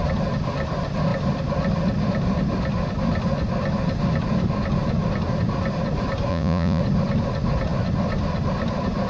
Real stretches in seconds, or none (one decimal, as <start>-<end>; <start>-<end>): 0.0-6.3; 6.8-9.1